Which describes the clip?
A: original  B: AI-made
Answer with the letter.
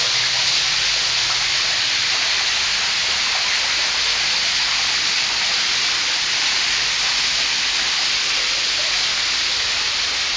A